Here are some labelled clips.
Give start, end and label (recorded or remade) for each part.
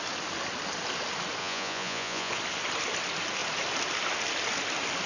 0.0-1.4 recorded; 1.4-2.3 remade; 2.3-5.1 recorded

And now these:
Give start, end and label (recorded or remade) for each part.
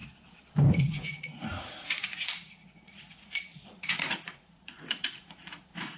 0.0-0.6 recorded; 0.6-6.0 remade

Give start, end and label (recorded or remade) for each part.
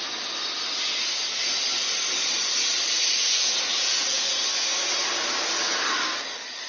0.0-3.2 recorded; 3.2-4.3 remade; 4.3-6.7 recorded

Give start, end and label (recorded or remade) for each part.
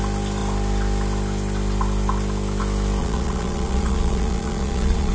0.0-3.0 recorded; 3.0-5.1 remade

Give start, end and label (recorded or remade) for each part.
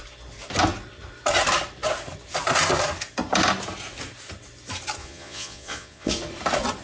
0.0-5.0 recorded; 5.0-6.1 remade; 6.1-6.8 recorded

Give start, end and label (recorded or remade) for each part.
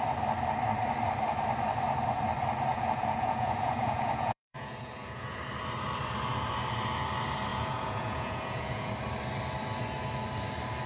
0.0-2.7 recorded; 2.7-5.4 remade; 5.4-7.5 recorded; 7.5-8.9 remade; 8.9-10.9 recorded